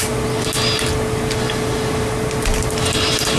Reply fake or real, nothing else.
real